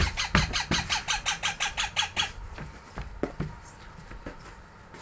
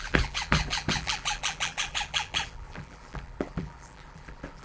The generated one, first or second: second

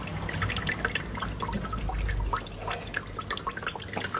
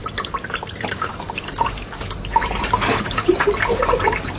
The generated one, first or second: second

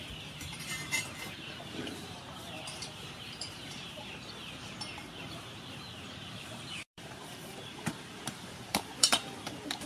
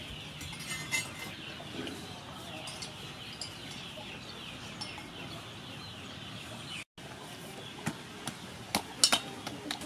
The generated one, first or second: first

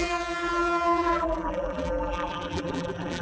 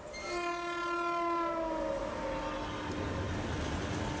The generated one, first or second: first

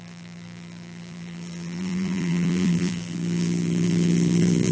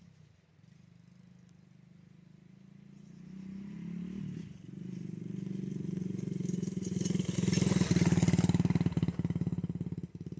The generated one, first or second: first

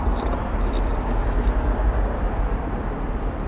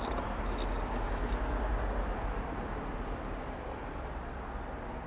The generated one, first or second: first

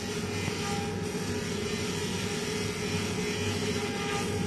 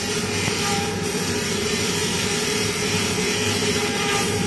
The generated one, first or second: second